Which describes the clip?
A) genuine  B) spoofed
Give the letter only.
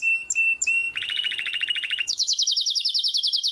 B